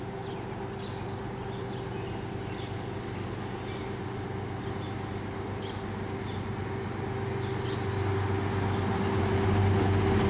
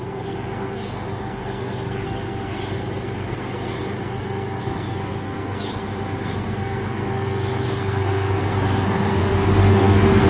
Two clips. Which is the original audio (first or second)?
first